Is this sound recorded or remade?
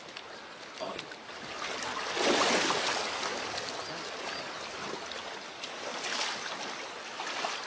recorded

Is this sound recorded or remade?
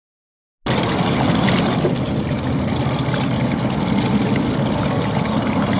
recorded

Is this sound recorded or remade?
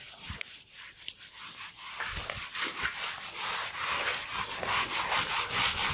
recorded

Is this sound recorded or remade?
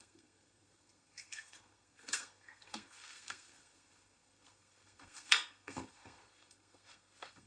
remade